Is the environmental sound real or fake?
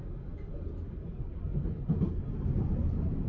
real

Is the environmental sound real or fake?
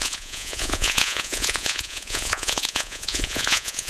fake